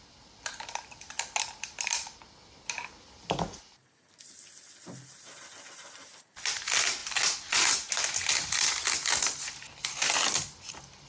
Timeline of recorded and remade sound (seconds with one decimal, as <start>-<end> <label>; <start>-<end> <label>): 0.0-11.1 recorded